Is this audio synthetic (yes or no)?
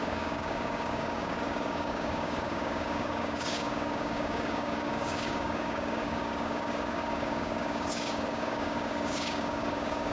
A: yes